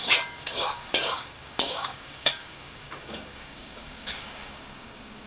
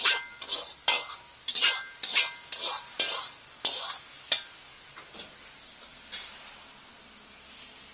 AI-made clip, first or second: first